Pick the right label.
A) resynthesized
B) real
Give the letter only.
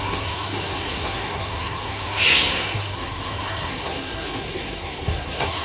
A